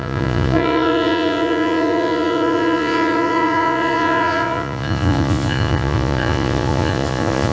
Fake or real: fake